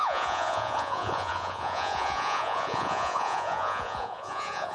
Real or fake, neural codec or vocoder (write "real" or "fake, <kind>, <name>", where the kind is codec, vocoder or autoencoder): fake, vocoder, Vocos